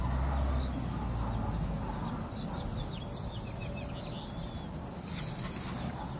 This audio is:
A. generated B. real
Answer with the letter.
B